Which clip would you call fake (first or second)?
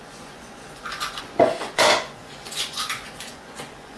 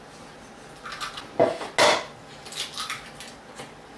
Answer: first